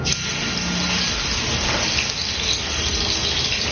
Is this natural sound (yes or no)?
yes